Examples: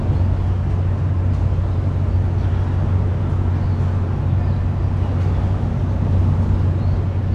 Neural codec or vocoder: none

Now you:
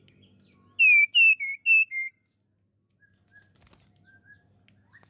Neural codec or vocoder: none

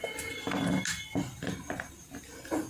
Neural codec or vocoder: none